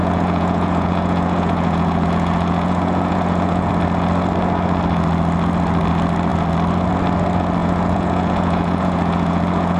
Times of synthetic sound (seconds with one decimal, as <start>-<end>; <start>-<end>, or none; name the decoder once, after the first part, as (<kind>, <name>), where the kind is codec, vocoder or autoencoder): 0.0-3.7 (vocoder, Vocos); 7.6-9.8